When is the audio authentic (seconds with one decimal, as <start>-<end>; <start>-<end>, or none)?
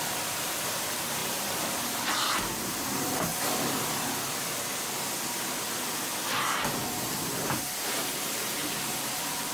3.3-6.4